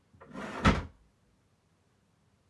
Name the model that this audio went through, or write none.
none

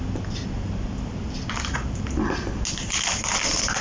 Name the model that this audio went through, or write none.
none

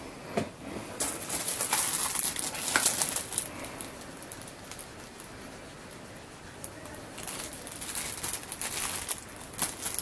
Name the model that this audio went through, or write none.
none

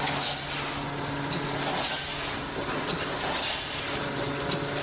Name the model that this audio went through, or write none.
none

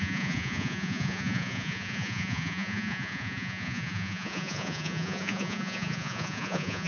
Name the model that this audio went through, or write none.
vocoder, Vocos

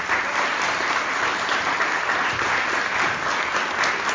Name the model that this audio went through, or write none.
none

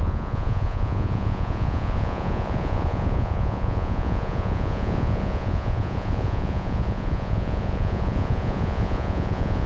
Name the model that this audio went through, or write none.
vocoder, Vocos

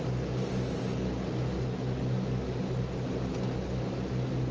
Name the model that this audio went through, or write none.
none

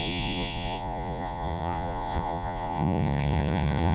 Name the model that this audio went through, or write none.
vocoder, Vocos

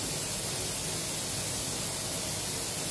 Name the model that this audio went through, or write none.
none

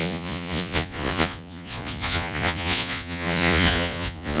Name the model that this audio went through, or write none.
vocoder, Vocos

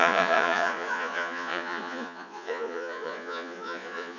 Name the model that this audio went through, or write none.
vocoder, Vocos